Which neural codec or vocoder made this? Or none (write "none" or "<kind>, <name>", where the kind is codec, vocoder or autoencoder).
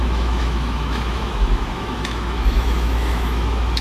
autoencoder, DAC-VAE